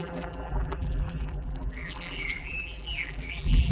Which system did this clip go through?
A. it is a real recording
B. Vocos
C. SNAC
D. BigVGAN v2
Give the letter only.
D